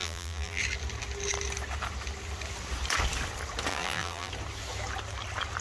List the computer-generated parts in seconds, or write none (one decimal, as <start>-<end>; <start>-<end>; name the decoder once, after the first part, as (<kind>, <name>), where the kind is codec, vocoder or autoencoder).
0.0-0.6 (vocoder, BigVGAN v2); 3.7-4.3